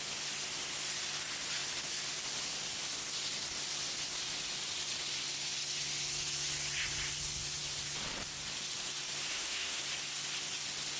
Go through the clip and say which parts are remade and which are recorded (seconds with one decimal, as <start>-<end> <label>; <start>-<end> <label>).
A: 0.0-9.3 recorded; 9.3-9.8 remade; 9.8-11.0 recorded